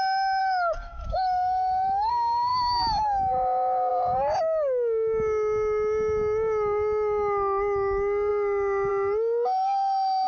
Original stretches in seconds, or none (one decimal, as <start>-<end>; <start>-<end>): 0.0-0.4; 2.1-10.3